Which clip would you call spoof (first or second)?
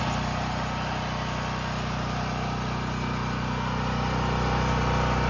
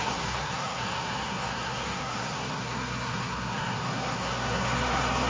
second